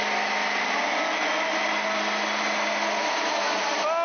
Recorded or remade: recorded